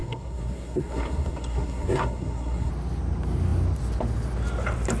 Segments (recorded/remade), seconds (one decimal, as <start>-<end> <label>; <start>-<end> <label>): 0.0-2.7 remade; 2.7-5.0 recorded